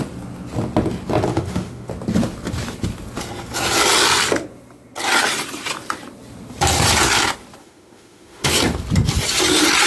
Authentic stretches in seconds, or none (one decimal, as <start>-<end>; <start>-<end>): 0.0-1.3; 1.9-7.6; 8.5-9.9